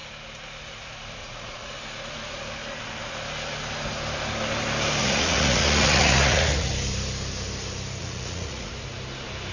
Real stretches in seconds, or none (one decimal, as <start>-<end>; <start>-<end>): 0.0-1.2; 1.7-5.0; 6.7-8.0; 8.7-9.5